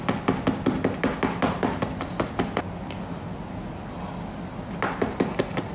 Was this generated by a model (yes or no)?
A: no